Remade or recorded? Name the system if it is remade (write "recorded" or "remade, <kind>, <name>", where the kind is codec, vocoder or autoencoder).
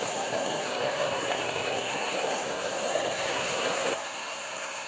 remade, codec, SNAC